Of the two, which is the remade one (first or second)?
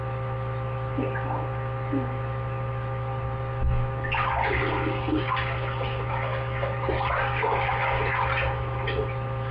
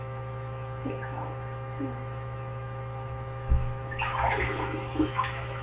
second